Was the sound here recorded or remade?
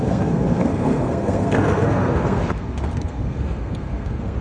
remade